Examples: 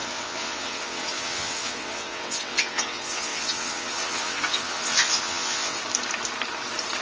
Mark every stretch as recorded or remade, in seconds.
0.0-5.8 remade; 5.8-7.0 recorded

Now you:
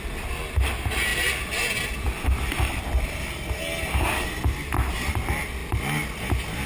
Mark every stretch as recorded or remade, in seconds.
0.0-6.7 recorded

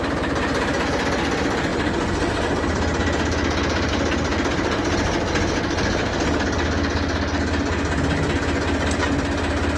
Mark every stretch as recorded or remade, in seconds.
0.0-4.3 recorded; 4.3-4.8 remade; 4.8-9.8 recorded

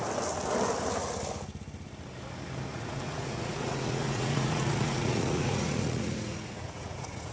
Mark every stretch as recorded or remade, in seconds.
0.0-2.7 recorded; 2.7-7.3 remade